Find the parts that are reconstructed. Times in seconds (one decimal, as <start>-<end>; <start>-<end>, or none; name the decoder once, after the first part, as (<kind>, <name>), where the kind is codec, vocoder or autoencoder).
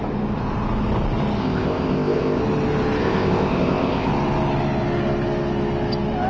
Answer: 1.4-2.4 (codec, ZipCodec); 3.0-4.1